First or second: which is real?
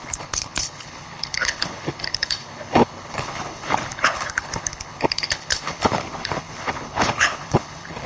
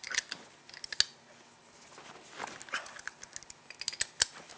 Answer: second